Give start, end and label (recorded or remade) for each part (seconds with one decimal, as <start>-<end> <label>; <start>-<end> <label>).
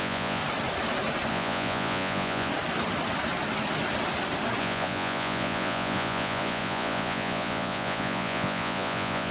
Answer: 0.0-0.4 remade; 0.4-1.3 recorded; 1.3-2.5 remade; 2.5-4.6 recorded; 4.6-9.3 remade